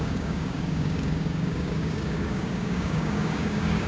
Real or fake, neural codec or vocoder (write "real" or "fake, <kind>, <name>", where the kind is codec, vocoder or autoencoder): fake, codec, DAC